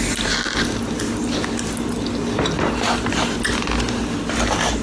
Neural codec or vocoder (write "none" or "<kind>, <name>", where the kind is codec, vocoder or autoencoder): none